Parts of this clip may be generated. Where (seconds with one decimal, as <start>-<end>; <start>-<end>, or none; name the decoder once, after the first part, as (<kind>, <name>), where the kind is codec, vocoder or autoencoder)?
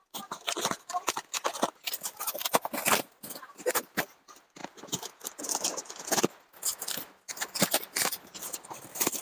none